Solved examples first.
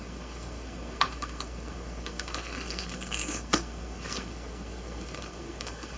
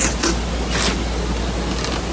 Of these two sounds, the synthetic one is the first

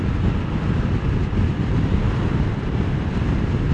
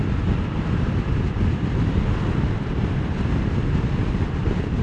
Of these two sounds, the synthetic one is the second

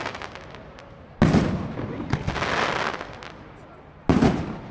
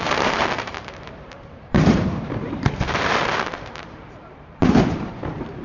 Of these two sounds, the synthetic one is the second